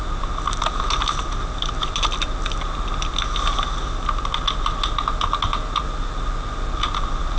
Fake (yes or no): no